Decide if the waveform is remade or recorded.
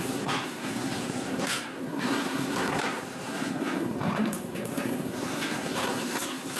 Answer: remade